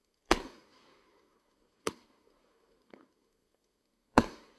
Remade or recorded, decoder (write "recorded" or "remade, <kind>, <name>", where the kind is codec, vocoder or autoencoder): remade, codec, SNAC